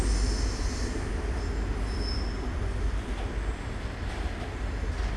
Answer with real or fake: real